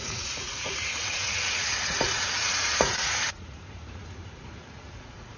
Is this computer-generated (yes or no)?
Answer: yes